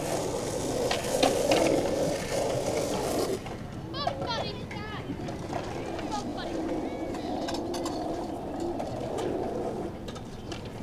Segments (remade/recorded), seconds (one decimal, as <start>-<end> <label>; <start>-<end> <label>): 0.0-10.8 recorded